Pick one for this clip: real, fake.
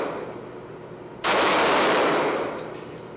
real